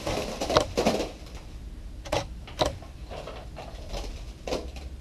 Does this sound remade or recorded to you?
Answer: remade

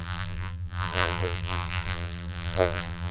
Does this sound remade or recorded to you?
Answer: remade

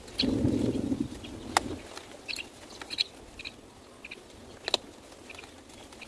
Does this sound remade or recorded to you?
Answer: recorded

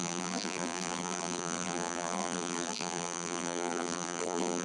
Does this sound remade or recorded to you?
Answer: remade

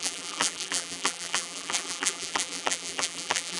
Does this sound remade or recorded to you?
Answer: remade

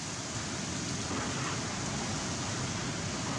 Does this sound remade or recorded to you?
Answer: recorded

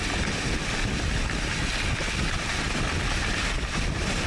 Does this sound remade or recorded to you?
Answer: remade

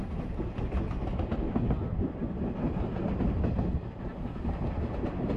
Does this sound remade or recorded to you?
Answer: recorded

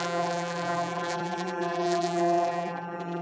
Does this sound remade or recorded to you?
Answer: remade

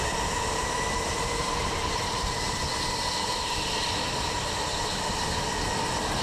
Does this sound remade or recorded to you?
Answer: recorded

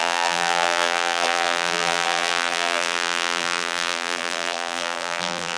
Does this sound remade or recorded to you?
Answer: remade